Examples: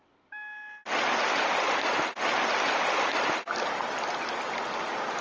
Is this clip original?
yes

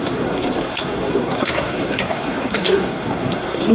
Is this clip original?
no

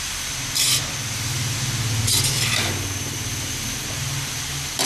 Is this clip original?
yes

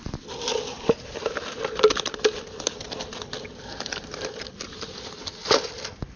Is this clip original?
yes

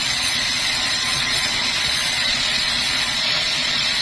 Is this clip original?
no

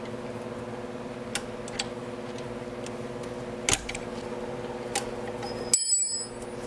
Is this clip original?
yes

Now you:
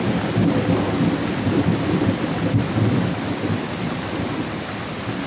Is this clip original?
yes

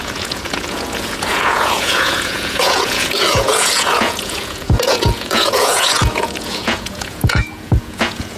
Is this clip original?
no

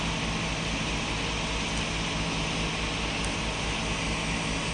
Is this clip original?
yes